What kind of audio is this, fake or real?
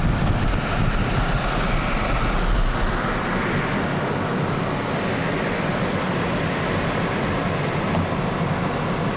real